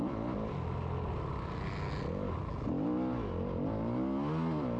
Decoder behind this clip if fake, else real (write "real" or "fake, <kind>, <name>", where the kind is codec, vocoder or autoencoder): real